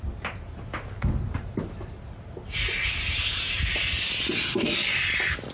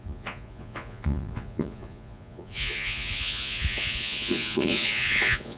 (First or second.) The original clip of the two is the first